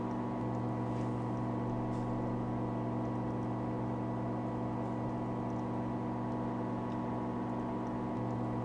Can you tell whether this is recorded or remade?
recorded